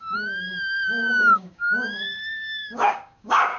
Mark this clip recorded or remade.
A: remade